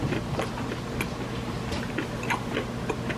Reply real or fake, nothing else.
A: real